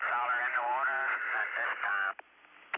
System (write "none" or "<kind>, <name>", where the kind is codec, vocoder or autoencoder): none